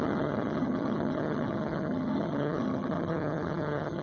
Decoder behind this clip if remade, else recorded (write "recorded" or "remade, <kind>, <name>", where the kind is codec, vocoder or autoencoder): remade, vocoder, HiFi-GAN